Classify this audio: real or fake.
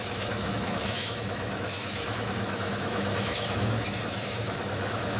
fake